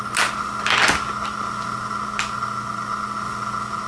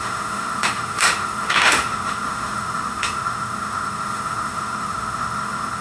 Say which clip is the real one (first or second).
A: first